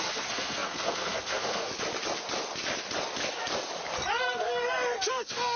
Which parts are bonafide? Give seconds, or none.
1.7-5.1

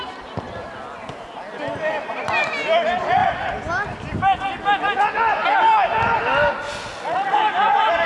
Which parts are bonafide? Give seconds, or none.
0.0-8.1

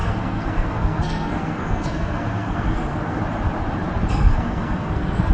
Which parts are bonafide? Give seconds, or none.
3.2-4.1

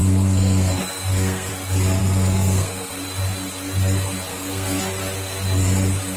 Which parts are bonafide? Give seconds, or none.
1.5-2.0; 2.9-4.3; 4.8-6.2

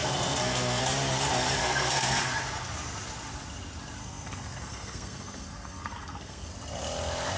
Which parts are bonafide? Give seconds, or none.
0.8-1.6; 2.2-4.0; 6.5-7.4

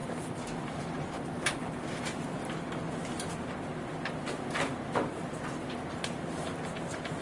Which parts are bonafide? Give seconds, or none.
0.0-7.2

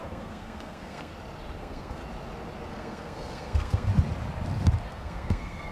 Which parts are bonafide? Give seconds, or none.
1.1-1.6; 2.0-2.7; 3.9-4.9